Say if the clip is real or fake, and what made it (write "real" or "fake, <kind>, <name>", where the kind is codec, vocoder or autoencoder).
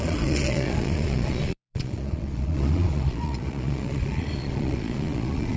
fake, vocoder, Vocos